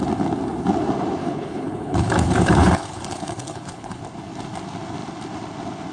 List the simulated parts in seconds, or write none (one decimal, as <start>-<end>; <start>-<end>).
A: 1.2-4.0